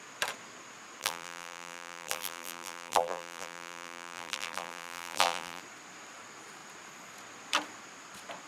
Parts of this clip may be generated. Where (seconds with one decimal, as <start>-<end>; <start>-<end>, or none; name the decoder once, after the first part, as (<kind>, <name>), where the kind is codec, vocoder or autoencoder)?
1.0-5.6 (vocoder, BigVGAN v2)